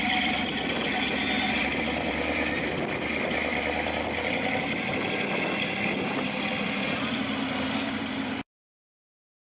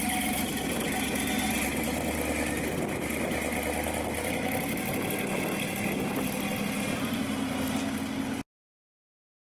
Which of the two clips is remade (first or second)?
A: first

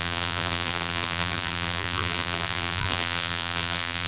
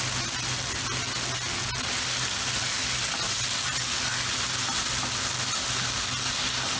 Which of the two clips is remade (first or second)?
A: first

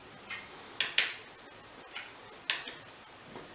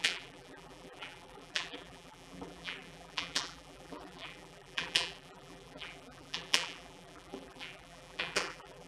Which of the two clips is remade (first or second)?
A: second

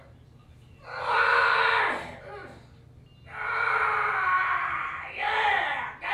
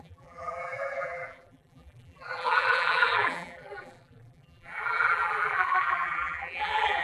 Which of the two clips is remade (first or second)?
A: second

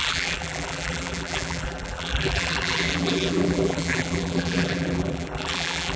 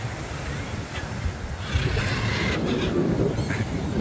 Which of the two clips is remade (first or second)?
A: first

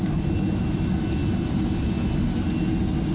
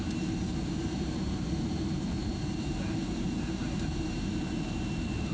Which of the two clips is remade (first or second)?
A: second